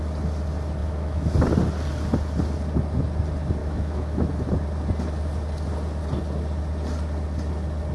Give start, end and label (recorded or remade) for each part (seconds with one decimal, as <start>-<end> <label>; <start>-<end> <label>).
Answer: 0.0-0.8 recorded; 0.8-1.3 remade; 1.3-3.6 recorded; 3.6-4.3 remade; 4.3-7.9 recorded